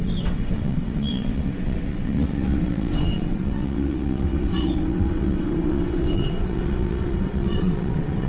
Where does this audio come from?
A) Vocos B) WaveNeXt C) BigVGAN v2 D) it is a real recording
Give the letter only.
B